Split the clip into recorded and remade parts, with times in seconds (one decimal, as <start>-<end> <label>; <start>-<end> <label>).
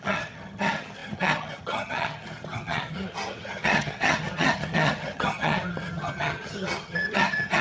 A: 0.0-7.6 remade